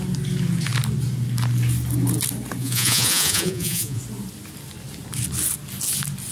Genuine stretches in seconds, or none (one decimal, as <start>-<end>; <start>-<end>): 0.0-2.6; 4.0-6.3